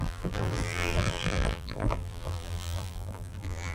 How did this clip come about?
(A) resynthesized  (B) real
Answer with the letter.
A